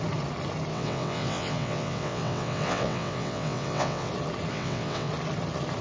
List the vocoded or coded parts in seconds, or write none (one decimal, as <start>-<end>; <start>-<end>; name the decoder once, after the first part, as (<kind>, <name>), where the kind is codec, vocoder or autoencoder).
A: 0.7-4.1 (vocoder, WaveNeXt); 4.5-5.1